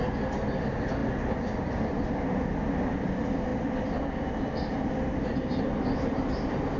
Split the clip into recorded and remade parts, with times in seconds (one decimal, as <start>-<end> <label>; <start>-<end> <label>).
0.0-6.8 recorded